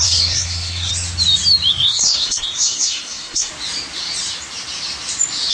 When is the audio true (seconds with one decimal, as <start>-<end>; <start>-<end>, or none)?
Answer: 0.9-1.7; 3.5-5.5